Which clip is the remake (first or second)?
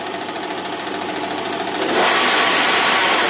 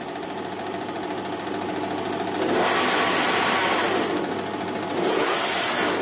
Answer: first